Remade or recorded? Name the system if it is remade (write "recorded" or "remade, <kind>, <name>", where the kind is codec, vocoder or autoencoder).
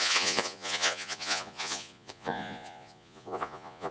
remade, vocoder, Vocos